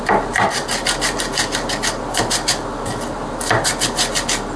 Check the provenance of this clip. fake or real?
real